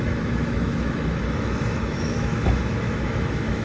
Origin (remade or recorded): remade